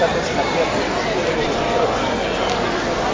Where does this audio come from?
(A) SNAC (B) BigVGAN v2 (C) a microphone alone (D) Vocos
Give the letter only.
C